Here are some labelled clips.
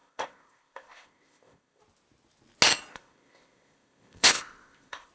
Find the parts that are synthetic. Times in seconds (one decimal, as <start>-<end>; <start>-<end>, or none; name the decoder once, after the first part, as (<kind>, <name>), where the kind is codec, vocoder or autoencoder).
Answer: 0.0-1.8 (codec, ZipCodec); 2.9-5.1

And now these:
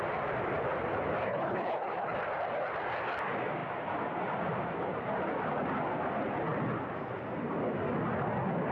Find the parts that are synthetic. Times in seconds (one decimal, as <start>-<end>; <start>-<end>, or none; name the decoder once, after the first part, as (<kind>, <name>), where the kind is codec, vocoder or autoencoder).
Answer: 1.2-2.2 (codec, HILCodec)

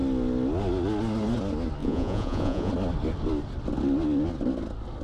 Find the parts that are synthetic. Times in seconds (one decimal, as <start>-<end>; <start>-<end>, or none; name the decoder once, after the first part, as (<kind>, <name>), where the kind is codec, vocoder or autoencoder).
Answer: 1.8-2.7 (vocoder, Vocos)

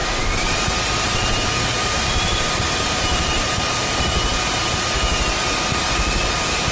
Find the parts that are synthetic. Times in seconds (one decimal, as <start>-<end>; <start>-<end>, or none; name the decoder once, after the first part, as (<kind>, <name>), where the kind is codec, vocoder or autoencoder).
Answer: 0.0-6.7 (vocoder, BigVGAN v2)

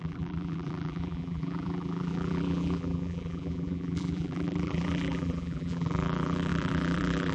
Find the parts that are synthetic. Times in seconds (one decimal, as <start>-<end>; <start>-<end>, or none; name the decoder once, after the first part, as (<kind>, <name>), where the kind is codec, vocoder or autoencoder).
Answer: 0.0-7.3 (vocoder, BigVGAN v2)